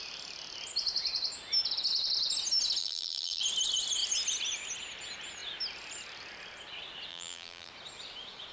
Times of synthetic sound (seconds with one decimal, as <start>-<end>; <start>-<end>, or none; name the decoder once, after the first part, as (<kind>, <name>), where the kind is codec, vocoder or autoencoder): 2.8-3.4 (vocoder, BigVGAN v2); 7.1-7.7